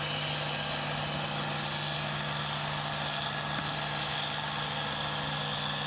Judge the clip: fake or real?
real